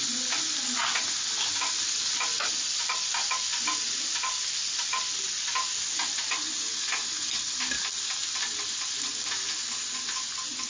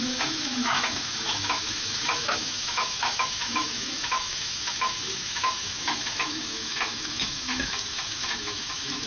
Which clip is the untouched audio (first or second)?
first